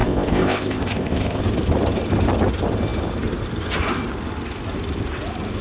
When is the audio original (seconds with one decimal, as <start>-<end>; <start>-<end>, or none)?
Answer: 1.4-5.6